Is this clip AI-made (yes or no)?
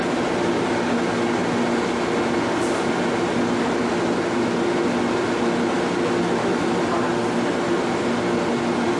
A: no